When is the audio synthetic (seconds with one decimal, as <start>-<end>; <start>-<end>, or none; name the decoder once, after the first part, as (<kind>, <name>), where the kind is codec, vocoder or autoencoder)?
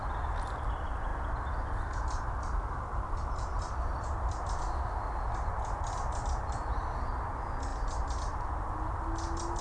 none